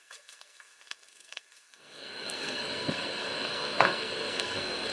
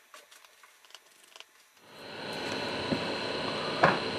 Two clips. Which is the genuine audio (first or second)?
second